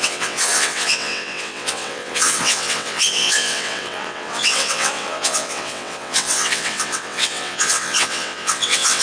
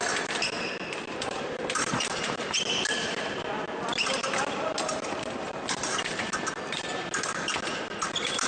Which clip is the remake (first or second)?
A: first